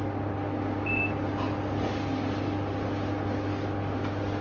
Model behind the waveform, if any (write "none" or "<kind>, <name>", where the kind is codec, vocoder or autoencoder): none